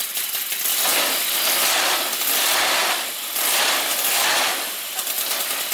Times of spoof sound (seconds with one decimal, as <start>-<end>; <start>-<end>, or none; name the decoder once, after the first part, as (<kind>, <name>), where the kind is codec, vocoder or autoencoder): none